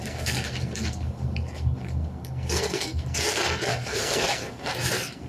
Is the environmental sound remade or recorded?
remade